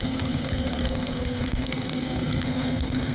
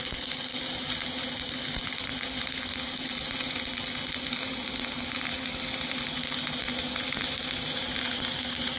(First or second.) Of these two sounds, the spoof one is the first